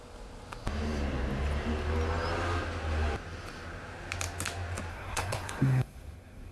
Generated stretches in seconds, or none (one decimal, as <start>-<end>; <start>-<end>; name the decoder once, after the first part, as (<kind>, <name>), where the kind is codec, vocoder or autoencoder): 4.9-6.5 (codec, SNAC)

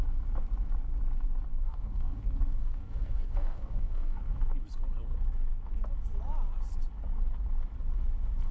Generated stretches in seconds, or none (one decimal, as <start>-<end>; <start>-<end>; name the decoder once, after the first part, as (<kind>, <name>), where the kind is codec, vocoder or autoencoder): 1.5-2.2 (codec, SNAC); 2.6-4.2